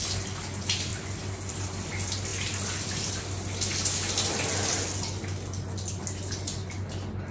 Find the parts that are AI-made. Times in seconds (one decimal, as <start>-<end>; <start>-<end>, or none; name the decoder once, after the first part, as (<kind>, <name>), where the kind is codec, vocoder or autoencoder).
none